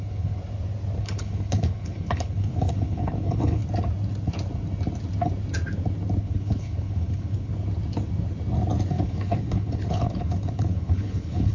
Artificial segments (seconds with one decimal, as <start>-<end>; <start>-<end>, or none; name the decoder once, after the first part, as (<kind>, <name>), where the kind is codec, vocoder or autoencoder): 0.0-0.4 (codec, HILCodec); 1.0-3.6; 6.2-7.5; 8.9-11.5